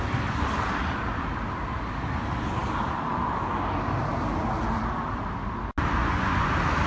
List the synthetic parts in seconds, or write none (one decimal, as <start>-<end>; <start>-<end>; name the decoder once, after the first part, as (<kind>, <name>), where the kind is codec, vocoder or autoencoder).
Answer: 6.0-6.5 (vocoder, Vocos)